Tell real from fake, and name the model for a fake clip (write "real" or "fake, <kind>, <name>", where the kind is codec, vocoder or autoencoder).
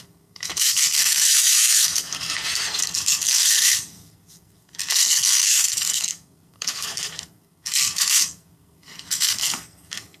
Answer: fake, codec, SNAC